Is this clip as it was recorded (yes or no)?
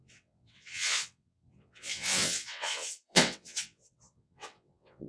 no